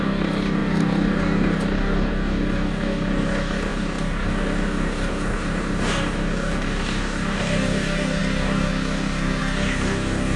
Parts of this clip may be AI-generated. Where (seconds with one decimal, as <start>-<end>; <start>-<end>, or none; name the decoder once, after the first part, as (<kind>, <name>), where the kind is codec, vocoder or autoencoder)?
0.0-10.4 (codec, DAC)